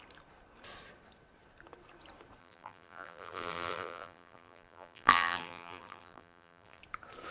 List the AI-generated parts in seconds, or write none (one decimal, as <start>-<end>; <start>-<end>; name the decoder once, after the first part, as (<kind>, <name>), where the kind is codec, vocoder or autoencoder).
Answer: 2.4-6.8 (vocoder, BigVGAN v2)

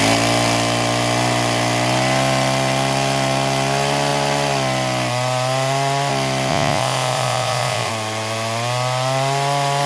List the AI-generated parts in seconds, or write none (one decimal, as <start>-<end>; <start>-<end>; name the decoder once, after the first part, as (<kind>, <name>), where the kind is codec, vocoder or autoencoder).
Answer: 6.5-7.9 (vocoder, Vocos)

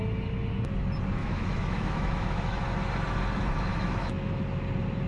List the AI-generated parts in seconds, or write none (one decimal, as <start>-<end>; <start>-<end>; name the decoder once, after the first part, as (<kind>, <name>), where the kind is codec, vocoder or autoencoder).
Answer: 1.2-2.6 (autoencoder, DAC-VAE); 3.7-4.4

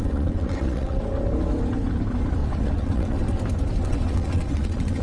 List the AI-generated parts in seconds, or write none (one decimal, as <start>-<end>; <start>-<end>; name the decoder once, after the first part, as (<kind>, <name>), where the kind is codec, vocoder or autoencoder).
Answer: 0.0-1.0 (vocoder, WaveNeXt); 2.4-3.2; 3.8-5.0

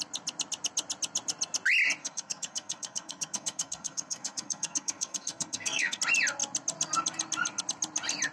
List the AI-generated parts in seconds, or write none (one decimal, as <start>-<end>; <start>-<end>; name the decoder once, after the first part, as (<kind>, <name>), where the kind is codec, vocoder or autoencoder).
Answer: 2.0-6.0 (codec, SNAC)

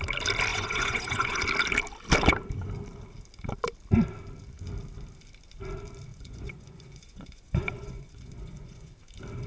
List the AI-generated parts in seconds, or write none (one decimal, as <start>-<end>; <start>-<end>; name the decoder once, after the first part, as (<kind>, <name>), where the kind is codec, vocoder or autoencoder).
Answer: 0.5-1.4 (vocoder, Vocos); 6.1-8.9

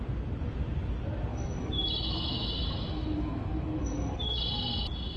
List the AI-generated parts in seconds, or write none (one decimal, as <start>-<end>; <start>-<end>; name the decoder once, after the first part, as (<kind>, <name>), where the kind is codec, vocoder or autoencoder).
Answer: 1.3-4.4 (autoencoder, DAC-VAE)